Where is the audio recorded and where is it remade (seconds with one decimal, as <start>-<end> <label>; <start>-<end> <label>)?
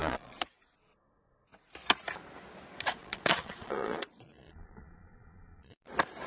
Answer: 0.0-0.6 remade; 0.6-3.0 recorded; 3.0-5.8 remade; 5.8-6.3 recorded